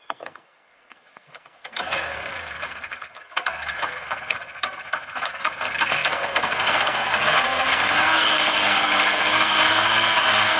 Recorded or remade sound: remade